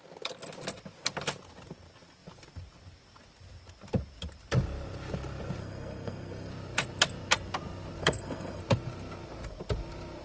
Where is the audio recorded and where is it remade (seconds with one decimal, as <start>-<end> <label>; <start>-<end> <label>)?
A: 0.0-5.6 recorded; 5.6-6.5 remade; 6.5-8.0 recorded; 8.0-8.6 remade; 8.6-10.2 recorded